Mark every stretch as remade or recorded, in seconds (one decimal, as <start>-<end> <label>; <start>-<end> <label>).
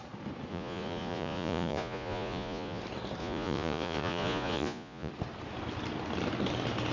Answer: 0.0-0.5 recorded; 0.5-2.8 remade; 2.8-3.2 recorded; 3.2-5.1 remade; 5.1-6.9 recorded